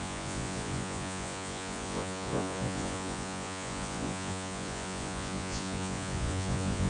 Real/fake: fake